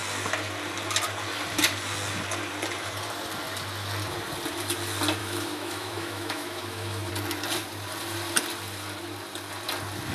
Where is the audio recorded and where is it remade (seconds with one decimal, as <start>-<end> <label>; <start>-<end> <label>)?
0.0-5.2 recorded; 5.2-7.1 remade; 7.1-10.1 recorded